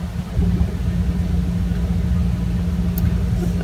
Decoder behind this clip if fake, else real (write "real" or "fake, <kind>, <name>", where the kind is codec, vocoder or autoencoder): real